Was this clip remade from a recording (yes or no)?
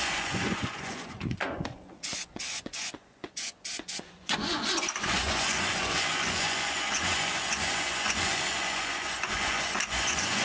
yes